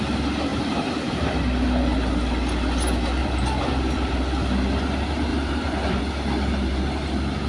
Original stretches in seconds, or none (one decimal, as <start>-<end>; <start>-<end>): 0.0-0.5; 1.4-3.2; 4.2-5.3; 6.0-7.5